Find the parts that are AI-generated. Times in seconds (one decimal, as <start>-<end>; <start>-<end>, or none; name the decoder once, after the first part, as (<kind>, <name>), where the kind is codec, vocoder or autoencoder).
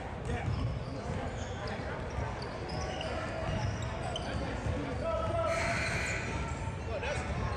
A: none